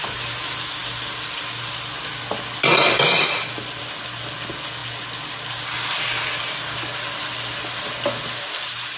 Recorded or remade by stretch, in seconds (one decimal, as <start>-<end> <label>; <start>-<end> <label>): 0.0-9.0 recorded